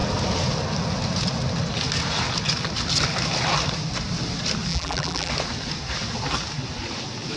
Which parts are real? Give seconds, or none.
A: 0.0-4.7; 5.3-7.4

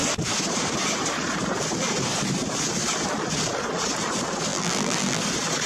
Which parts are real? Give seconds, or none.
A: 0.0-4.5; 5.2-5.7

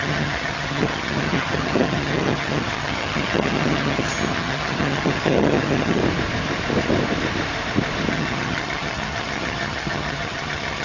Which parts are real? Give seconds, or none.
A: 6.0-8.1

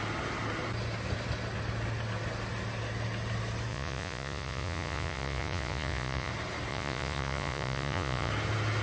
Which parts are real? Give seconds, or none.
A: 0.0-3.7; 6.3-6.7; 8.3-8.8

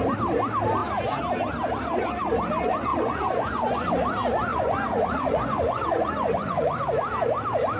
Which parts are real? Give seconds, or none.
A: 0.0-2.9; 3.9-4.5; 6.8-7.8